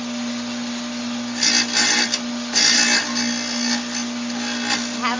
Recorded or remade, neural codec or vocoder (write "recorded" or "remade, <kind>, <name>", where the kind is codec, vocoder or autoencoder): recorded